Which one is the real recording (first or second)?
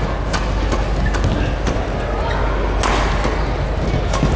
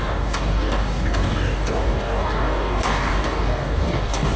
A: first